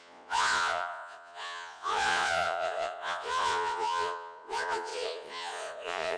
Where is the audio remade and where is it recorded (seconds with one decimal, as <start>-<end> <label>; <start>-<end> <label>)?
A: 0.0-6.2 remade